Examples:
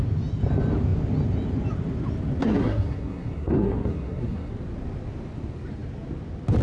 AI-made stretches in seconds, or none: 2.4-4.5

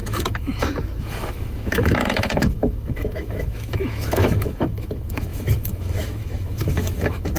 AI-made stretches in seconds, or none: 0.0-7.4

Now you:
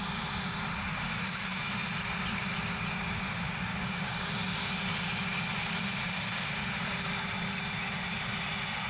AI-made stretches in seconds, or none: 0.9-1.6; 3.7-4.3